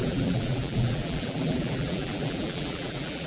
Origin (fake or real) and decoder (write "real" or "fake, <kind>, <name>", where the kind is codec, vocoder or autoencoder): fake, vocoder, BigVGAN v2